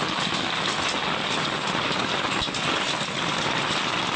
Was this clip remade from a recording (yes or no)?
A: no